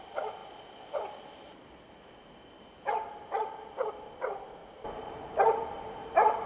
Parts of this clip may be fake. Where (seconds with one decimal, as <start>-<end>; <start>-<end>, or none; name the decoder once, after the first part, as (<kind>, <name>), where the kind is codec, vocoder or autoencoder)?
4.6-6.5 (vocoder, BigVGAN v2)